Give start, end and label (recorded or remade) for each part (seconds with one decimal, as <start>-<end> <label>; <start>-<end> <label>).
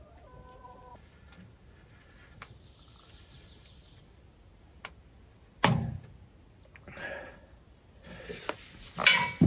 0.0-9.5 recorded